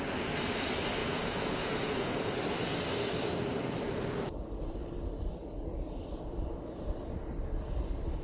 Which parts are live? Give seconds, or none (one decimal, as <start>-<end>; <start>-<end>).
0.0-1.0; 2.3-8.2